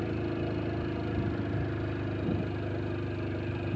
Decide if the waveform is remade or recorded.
recorded